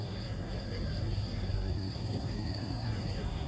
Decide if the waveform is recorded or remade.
remade